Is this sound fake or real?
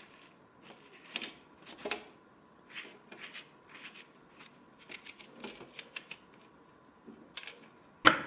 real